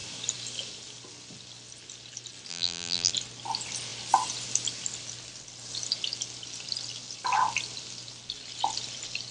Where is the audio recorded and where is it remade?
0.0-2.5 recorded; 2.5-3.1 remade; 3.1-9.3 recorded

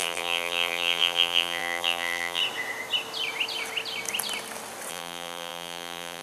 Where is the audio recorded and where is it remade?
0.0-2.4 remade; 2.4-4.9 recorded; 4.9-6.2 remade

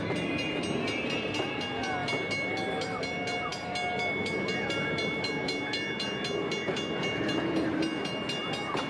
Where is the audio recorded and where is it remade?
0.0-8.9 recorded

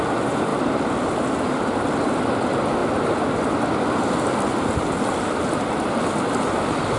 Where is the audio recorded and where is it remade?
0.0-0.5 recorded; 0.5-2.3 remade; 2.3-7.0 recorded

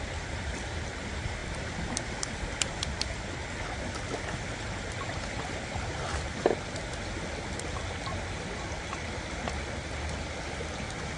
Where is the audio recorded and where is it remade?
0.0-1.4 recorded; 1.4-3.3 remade; 3.3-11.2 recorded

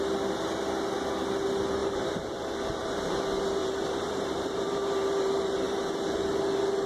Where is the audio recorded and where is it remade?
0.0-1.8 recorded; 1.8-3.2 remade; 3.2-3.6 recorded; 3.6-5.8 remade; 5.8-6.9 recorded